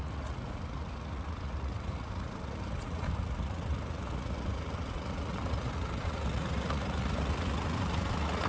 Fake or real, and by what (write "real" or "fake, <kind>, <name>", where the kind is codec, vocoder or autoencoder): fake, vocoder, Vocos